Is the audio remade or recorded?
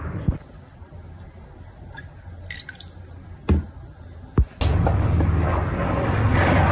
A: recorded